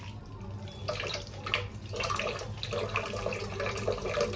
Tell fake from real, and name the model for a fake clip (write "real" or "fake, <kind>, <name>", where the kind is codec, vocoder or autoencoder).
real